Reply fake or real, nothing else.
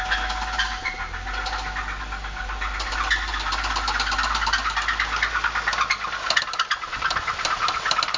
real